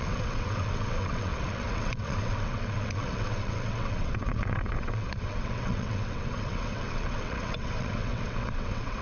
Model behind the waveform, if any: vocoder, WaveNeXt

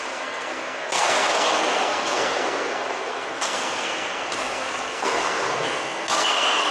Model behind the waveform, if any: codec, SNAC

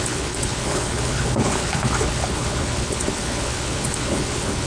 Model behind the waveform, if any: codec, HILCodec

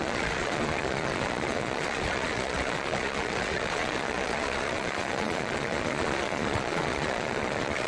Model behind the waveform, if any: vocoder, Vocos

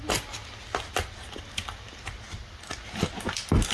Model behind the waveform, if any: none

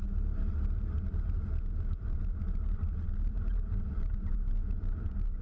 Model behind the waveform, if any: vocoder, BigVGAN v2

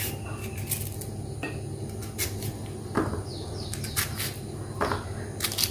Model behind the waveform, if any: none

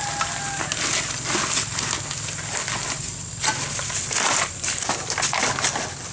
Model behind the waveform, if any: none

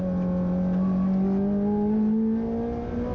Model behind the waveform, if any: none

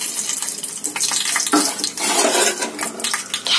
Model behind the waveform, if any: none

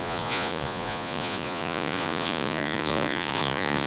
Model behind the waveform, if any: vocoder, Vocos